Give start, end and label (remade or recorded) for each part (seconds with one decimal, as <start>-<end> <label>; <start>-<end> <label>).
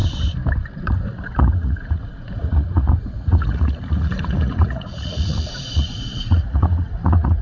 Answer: 0.0-0.8 recorded; 0.8-7.4 remade